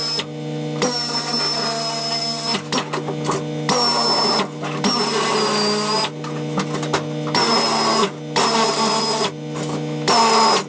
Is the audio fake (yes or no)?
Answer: no